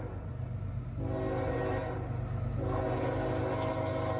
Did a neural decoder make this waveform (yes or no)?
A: no